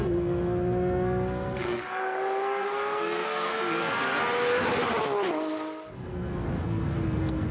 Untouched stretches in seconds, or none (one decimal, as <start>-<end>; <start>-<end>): 3.5-5.9